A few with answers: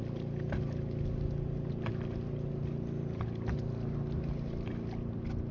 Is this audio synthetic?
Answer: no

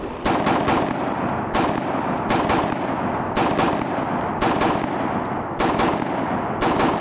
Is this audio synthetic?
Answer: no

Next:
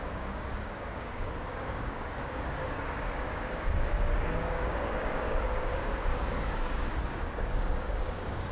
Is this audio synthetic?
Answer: yes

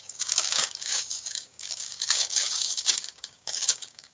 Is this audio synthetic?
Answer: yes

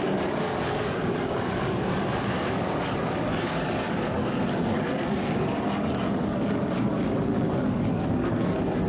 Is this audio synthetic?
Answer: yes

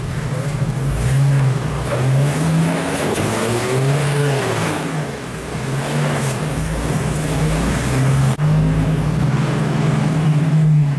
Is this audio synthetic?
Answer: yes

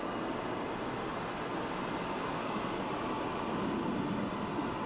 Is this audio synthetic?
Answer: no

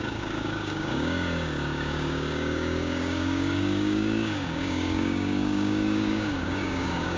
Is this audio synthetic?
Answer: yes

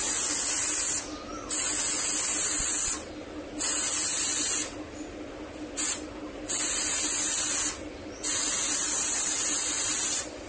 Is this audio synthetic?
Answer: no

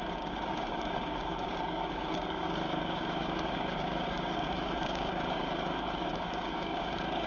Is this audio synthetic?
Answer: yes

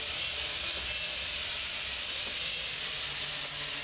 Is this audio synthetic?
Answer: no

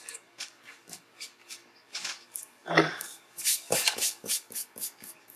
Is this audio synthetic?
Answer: yes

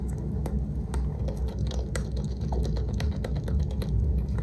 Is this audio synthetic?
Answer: yes